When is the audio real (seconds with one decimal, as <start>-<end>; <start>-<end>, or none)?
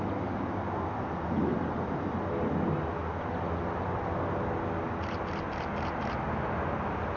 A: 0.0-7.2